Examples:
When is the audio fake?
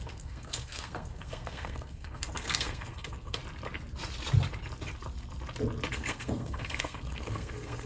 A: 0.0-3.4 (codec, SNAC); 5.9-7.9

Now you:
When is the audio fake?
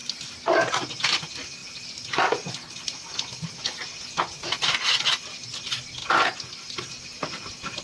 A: none